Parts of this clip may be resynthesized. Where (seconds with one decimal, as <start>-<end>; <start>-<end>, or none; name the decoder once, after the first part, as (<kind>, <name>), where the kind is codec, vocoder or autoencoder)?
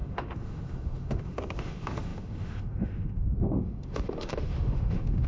0.0-5.3 (autoencoder, DAC-VAE)